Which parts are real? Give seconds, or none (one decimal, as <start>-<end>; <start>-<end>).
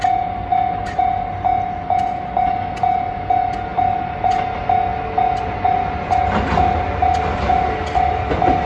0.0-8.7